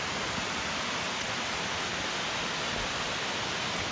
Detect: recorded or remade recorded